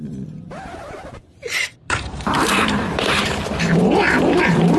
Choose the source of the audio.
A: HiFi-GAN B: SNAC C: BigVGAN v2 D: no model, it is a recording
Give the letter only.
C